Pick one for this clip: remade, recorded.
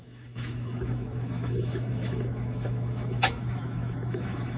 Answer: remade